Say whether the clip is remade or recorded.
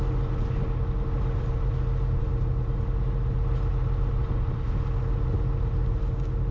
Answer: recorded